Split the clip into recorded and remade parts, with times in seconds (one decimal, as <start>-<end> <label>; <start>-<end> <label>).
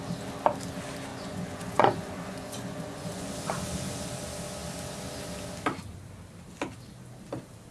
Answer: 0.0-1.1 recorded; 1.1-3.3 remade; 3.3-7.7 recorded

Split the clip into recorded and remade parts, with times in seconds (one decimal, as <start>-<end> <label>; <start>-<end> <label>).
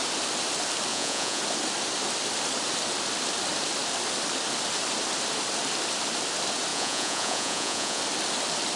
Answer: 0.0-0.9 recorded; 0.9-1.4 remade; 1.4-6.7 recorded; 6.7-8.0 remade; 8.0-8.8 recorded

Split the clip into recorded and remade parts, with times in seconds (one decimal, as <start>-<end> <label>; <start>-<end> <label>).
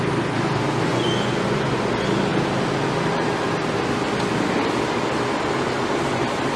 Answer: 0.0-0.9 recorded; 0.9-1.9 remade; 1.9-6.6 recorded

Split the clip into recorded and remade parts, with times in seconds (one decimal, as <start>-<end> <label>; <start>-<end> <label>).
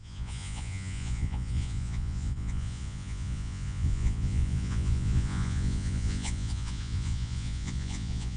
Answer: 0.0-8.4 remade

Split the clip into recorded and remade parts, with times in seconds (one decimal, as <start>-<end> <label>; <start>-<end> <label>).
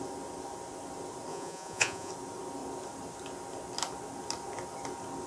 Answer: 0.0-1.3 recorded; 1.3-2.1 remade; 2.1-5.3 recorded